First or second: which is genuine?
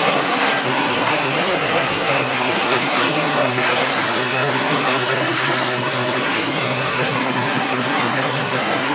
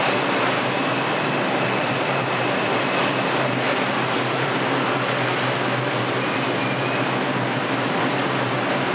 second